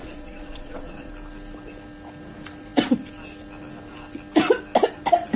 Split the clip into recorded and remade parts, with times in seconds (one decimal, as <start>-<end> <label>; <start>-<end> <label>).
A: 0.0-1.1 remade; 1.1-5.4 recorded